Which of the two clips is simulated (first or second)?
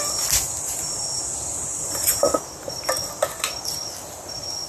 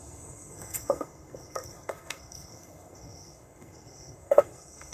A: second